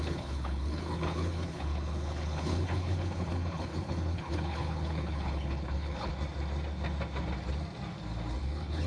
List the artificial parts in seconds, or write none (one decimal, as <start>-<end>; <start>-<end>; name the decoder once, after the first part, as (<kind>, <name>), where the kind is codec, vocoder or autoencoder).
0.0-6.1 (codec, HILCodec); 8.4-8.9